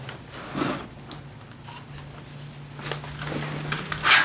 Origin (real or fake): real